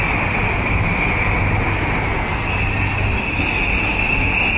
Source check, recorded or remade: recorded